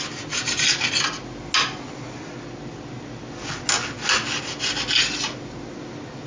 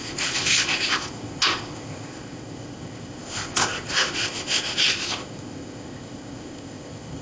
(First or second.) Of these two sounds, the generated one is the second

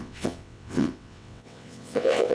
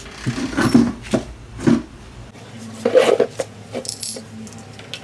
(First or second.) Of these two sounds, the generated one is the first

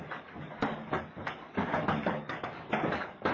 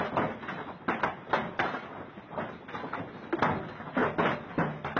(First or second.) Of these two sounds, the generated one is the first